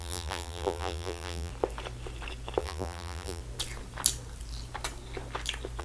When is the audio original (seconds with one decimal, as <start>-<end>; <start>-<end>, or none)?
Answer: 1.5-2.6; 3.4-5.8